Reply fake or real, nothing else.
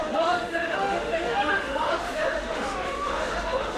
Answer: fake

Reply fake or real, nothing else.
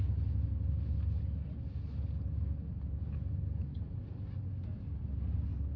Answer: real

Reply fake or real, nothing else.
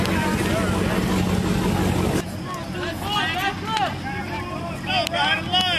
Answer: real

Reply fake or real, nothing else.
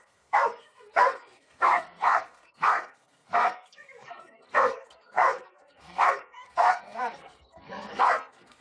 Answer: fake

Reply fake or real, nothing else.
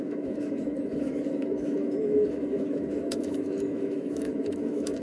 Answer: fake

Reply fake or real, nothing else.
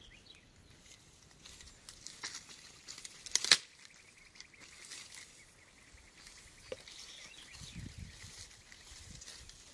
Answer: real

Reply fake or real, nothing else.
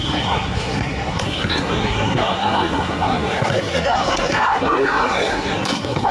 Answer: fake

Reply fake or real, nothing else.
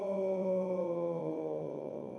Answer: fake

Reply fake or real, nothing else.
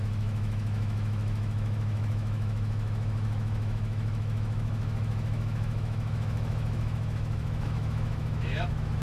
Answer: fake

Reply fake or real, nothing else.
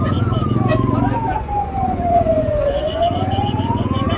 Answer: fake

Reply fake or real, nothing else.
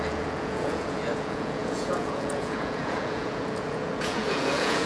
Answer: fake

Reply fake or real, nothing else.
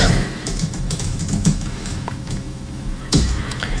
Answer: fake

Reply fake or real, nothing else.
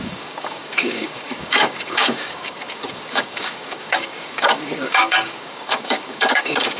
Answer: fake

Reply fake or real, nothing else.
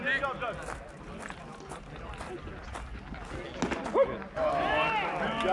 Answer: real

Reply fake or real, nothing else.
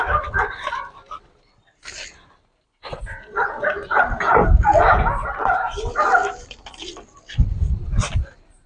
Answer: real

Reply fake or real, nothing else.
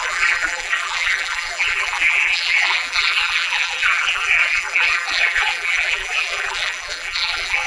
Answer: fake